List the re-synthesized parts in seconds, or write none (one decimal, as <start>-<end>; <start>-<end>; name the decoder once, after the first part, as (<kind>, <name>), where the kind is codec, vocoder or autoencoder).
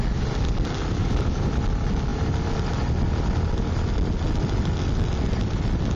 1.0-1.5 (codec, DAC)